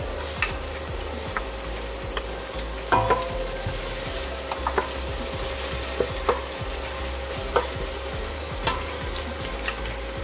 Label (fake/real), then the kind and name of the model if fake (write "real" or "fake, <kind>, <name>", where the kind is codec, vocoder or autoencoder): real